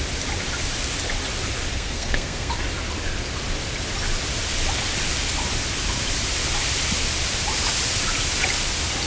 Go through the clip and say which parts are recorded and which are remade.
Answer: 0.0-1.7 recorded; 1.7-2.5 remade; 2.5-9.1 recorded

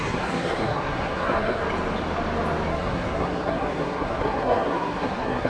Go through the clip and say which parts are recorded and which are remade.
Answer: 0.0-1.6 remade; 1.6-2.7 recorded; 2.7-5.5 remade

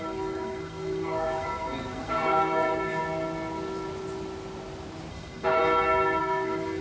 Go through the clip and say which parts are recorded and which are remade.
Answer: 0.0-3.0 remade; 3.0-5.1 recorded; 5.1-5.6 remade; 5.6-6.2 recorded; 6.2-6.8 remade

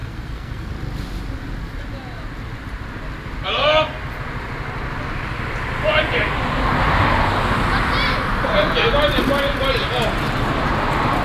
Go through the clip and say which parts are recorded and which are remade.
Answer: 0.0-0.7 remade; 0.7-11.2 recorded

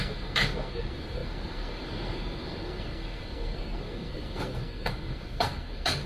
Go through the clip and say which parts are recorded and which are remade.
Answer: 0.0-6.1 remade

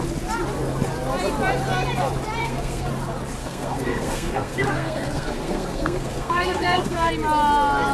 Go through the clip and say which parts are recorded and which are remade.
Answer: 0.0-2.4 recorded; 2.4-2.9 remade; 2.9-3.4 recorded; 3.4-7.1 remade; 7.1-7.9 recorded

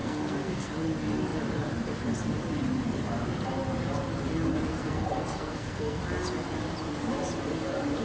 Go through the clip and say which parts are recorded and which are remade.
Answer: 0.0-0.7 remade; 0.7-4.7 recorded; 4.7-6.0 remade; 6.0-8.0 recorded